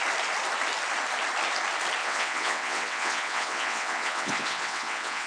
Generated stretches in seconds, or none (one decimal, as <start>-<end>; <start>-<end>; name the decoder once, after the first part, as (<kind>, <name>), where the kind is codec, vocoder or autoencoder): 2.0-5.3 (vocoder, WaveNeXt)